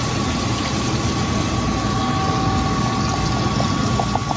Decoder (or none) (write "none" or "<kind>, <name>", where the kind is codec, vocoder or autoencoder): none